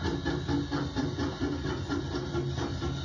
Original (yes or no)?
yes